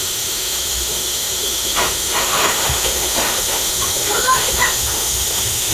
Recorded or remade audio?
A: remade